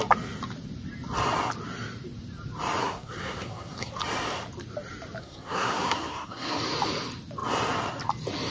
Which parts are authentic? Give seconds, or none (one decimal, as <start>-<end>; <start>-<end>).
0.0-2.8; 3.9-5.2; 6.6-8.5